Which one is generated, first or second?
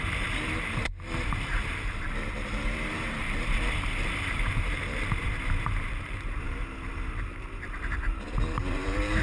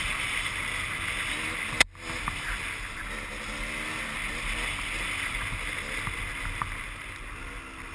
first